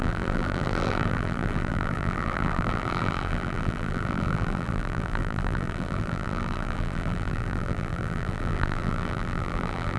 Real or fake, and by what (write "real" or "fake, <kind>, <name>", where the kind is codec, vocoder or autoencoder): fake, vocoder, BigVGAN v2